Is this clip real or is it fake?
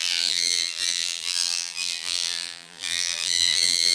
fake